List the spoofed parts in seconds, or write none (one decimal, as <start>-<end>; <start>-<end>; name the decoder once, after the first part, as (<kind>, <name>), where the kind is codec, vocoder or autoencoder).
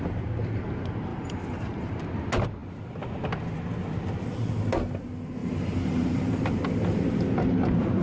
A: 1.1-2.0 (vocoder, BigVGAN v2); 5.4-6.4